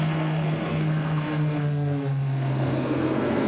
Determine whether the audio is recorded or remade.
remade